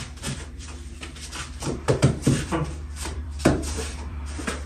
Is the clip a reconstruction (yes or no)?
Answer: yes